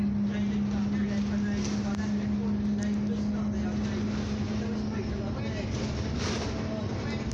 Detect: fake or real real